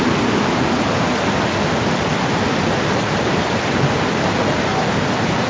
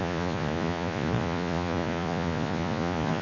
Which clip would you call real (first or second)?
first